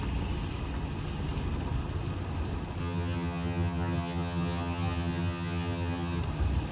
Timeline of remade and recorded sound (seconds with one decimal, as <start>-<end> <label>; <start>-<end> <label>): 0.0-2.8 recorded; 2.8-6.2 remade; 6.2-6.7 recorded